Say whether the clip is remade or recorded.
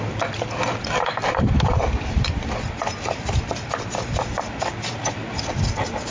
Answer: remade